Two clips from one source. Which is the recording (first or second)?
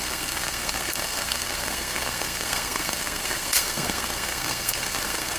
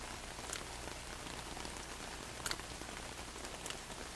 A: second